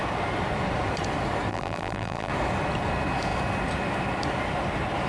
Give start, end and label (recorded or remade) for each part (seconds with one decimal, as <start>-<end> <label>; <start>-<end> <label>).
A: 0.0-1.5 recorded; 1.5-2.3 remade; 2.3-5.1 recorded